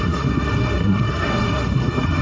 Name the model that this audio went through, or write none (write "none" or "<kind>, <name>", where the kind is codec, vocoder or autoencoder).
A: codec, SNAC